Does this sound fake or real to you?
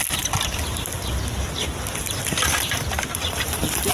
real